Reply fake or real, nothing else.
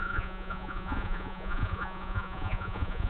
fake